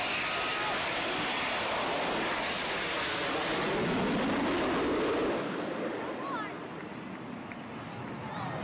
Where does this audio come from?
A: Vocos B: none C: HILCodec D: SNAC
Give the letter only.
B